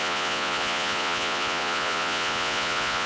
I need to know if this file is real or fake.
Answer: fake